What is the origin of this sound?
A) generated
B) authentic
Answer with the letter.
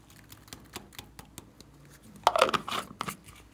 B